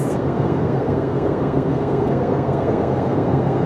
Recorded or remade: remade